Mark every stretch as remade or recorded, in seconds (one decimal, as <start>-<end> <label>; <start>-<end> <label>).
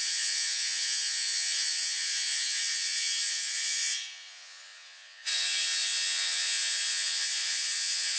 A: 0.0-8.2 remade